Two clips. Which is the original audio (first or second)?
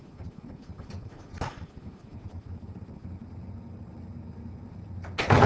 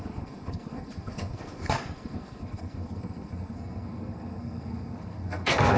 first